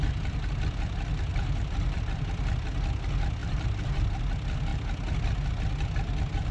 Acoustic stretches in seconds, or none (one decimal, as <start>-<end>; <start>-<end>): 0.0-1.3; 2.0-3.4; 4.2-6.5